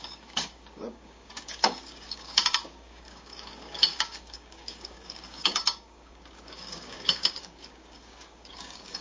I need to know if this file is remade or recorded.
remade